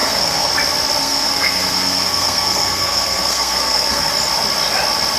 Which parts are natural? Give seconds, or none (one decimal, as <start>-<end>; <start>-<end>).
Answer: 0.5-1.0; 4.1-5.2